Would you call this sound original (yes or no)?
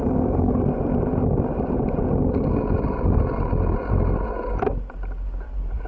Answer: yes